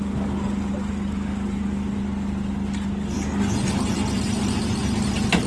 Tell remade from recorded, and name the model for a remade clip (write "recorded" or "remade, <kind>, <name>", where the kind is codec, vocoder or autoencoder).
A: recorded